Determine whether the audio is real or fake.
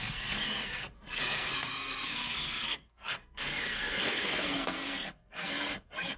fake